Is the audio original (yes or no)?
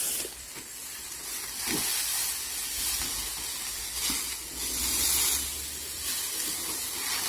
yes